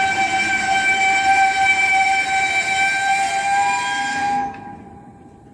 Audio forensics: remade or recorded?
remade